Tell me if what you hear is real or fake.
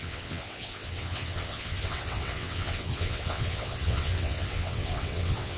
fake